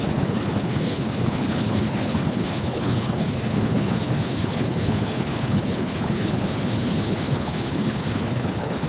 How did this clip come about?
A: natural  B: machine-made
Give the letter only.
B